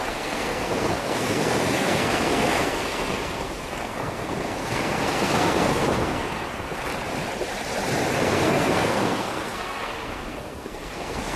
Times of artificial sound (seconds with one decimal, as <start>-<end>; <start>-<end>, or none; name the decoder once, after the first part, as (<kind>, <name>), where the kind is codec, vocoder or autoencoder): 0.0-6.9 (codec, SNAC); 8.1-11.4